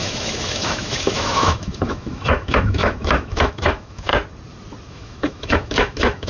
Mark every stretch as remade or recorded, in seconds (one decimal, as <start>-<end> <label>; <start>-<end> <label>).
0.0-4.1 remade; 4.1-4.9 recorded; 4.9-6.3 remade

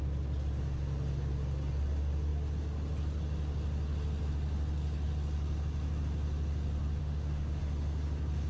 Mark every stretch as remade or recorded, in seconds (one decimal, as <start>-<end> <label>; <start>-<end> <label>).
0.0-7.0 recorded; 7.0-7.6 remade; 7.6-8.5 recorded

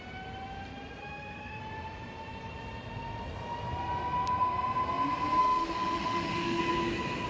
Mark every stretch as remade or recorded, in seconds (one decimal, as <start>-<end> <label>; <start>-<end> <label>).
0.0-1.0 recorded; 1.0-1.6 remade; 1.6-5.4 recorded; 5.4-6.6 remade; 6.6-7.3 recorded

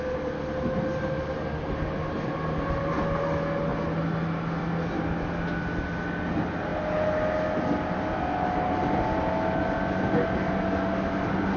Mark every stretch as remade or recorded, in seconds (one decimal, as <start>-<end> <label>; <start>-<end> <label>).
0.0-11.6 recorded

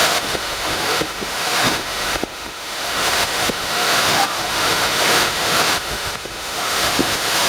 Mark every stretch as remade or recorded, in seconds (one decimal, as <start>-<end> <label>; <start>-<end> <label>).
0.0-7.5 remade

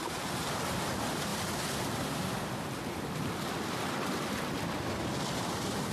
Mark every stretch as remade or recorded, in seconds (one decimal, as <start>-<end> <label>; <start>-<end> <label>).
0.0-5.9 recorded

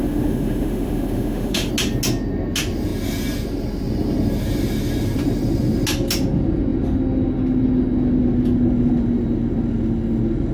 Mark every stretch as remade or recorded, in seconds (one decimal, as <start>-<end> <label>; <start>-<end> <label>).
0.0-1.7 remade; 1.7-10.5 recorded